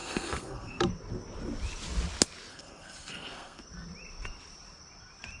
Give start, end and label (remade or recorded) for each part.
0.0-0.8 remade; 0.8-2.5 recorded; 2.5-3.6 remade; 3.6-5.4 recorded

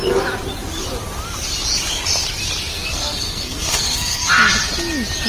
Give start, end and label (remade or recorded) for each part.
0.0-2.7 recorded; 2.7-4.3 remade; 4.3-5.3 recorded

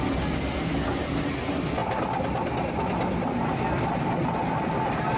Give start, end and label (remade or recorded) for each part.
0.0-5.2 recorded